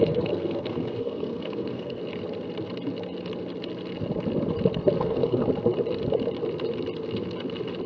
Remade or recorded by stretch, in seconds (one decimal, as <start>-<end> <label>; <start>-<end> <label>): 0.0-2.0 remade; 2.0-5.0 recorded; 5.0-5.4 remade; 5.4-7.9 recorded